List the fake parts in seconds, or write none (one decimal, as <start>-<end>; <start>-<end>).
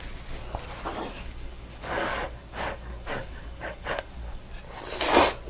1.1-4.4